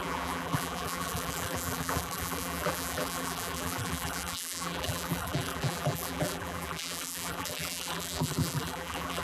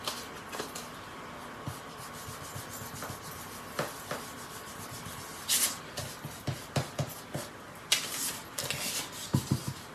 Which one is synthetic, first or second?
first